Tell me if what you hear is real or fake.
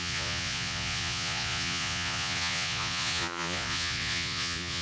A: fake